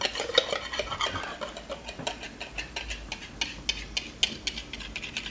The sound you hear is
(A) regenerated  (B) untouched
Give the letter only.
B